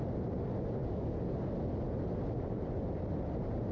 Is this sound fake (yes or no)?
no